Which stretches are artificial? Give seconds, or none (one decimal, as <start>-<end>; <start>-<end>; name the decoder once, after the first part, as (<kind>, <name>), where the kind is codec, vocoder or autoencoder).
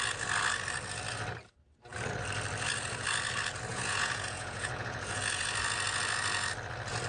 3.7-5.2 (vocoder, Vocos)